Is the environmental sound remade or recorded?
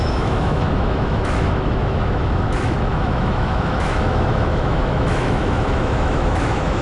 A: remade